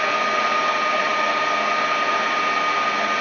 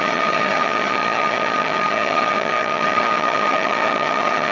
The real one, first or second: first